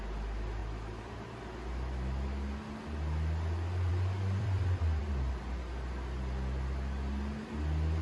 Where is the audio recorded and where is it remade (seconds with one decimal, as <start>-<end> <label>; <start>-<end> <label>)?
0.0-0.6 recorded; 0.6-1.4 remade; 1.4-3.9 recorded; 3.9-5.0 remade; 5.0-8.0 recorded